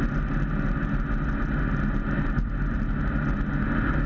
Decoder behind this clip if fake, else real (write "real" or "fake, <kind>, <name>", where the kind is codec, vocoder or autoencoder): real